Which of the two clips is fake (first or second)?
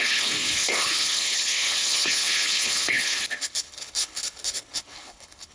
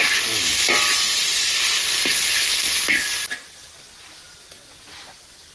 first